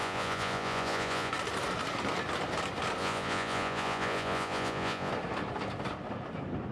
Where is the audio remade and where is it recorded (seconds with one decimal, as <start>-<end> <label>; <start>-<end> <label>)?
0.0-1.3 remade; 1.3-3.0 recorded; 3.0-5.1 remade; 5.1-6.7 recorded